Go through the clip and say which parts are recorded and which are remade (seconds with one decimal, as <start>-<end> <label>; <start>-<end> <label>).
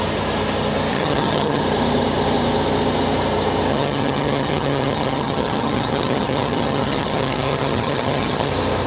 0.0-0.9 recorded; 0.9-1.6 remade; 1.6-3.7 recorded; 3.7-8.5 remade; 8.5-8.9 recorded